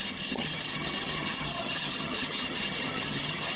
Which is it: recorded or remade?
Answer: remade